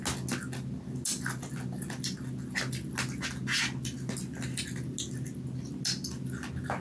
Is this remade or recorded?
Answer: recorded